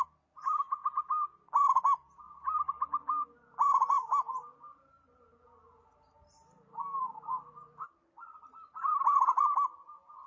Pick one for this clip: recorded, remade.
recorded